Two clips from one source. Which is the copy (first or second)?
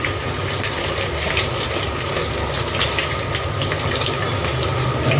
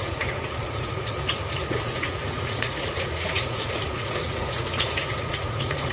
second